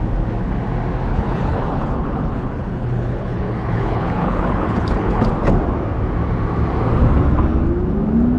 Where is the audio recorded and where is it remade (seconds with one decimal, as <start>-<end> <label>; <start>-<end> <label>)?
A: 0.0-1.1 recorded; 1.1-5.3 remade; 5.3-8.4 recorded